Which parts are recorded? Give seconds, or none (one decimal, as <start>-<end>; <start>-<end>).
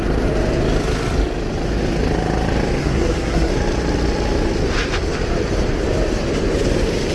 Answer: 0.0-2.8; 3.5-7.1